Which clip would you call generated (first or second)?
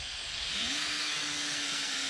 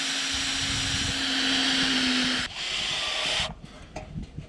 first